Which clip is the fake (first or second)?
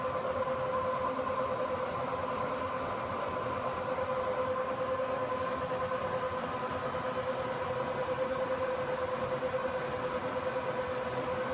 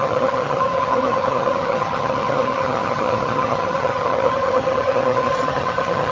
second